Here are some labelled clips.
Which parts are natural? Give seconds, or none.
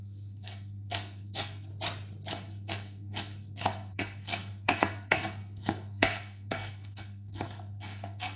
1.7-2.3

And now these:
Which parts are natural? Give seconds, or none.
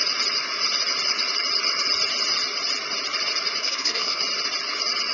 0.0-3.6; 4.2-5.1